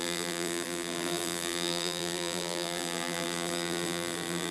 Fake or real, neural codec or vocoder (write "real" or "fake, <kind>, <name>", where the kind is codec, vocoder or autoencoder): fake, vocoder, BigVGAN v2